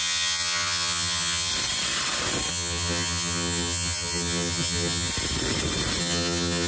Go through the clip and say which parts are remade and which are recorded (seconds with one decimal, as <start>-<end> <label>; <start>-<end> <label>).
0.0-1.5 remade; 1.5-2.5 recorded; 2.5-5.1 remade; 5.1-6.0 recorded; 6.0-6.7 remade